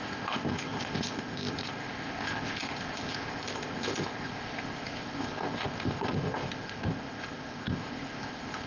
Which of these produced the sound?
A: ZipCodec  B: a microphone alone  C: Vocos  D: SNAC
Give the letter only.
A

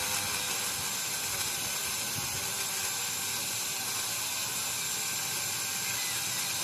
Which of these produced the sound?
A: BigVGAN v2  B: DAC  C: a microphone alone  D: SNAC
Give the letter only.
C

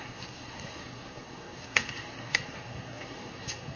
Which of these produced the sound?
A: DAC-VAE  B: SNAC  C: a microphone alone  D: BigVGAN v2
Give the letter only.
B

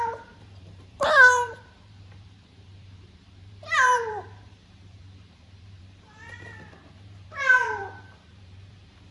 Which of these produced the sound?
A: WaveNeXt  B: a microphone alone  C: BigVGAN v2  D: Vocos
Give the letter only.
C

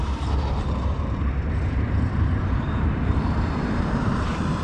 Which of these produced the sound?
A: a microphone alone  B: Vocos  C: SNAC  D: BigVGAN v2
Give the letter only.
D